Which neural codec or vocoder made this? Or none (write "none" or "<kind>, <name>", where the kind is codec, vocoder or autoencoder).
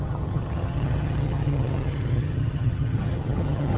vocoder, HiFi-GAN